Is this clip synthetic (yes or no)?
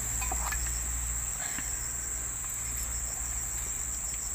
no